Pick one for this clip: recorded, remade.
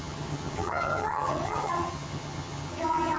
remade